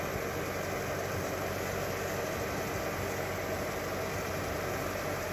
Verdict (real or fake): real